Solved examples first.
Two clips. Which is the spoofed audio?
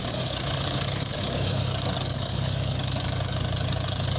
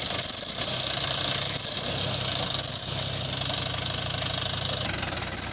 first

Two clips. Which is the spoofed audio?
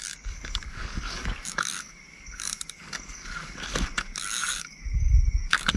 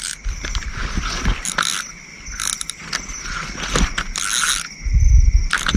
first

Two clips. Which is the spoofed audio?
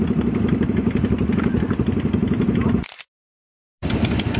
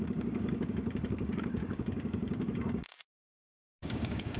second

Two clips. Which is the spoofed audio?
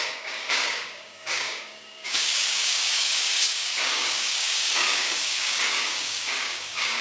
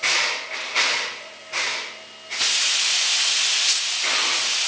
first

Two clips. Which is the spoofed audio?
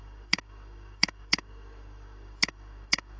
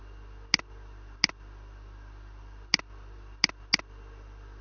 first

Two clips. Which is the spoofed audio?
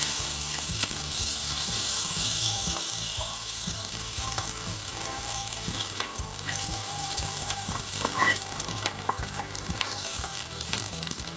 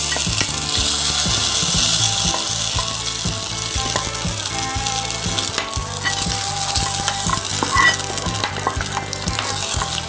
first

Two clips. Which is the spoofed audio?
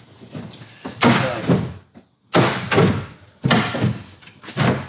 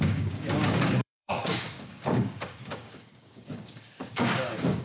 second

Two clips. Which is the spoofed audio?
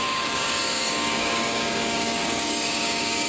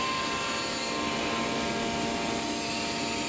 first